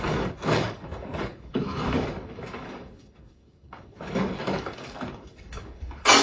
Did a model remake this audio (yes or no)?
yes